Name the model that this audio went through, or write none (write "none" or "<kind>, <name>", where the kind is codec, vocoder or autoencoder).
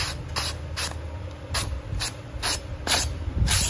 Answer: none